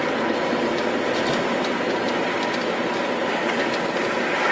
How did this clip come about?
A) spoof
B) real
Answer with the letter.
B